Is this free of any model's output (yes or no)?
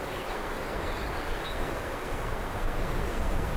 no